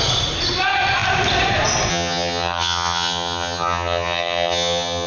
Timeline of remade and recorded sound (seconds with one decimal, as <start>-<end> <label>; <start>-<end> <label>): 0.0-1.9 recorded; 1.9-5.1 remade